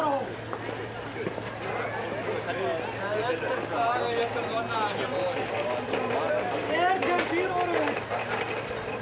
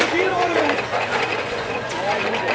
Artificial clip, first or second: second